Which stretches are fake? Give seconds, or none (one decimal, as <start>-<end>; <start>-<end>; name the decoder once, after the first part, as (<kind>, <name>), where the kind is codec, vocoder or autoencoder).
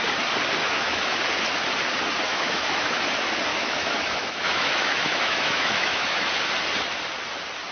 0.6-1.2 (autoencoder, DAC-VAE); 2.3-3.0; 3.5-6.3